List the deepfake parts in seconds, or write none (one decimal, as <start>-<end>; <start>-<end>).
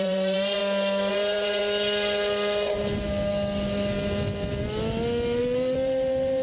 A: 0.0-0.6; 1.1-1.6; 5.4-6.4